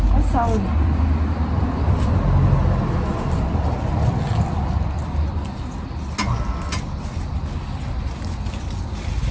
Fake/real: real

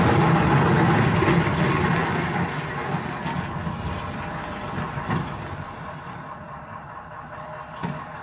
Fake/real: real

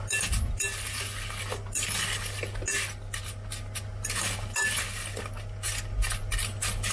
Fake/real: real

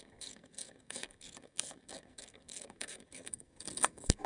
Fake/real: fake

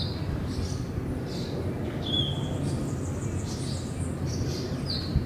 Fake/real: real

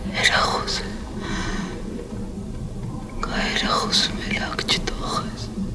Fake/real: fake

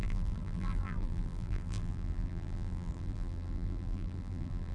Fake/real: fake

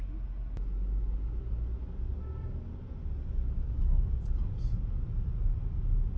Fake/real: real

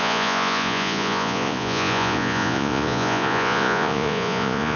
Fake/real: fake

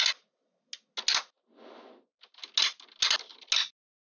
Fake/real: real